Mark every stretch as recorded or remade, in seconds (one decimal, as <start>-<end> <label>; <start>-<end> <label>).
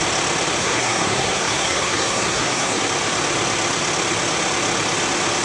0.0-0.6 recorded; 0.6-2.8 remade; 2.8-5.4 recorded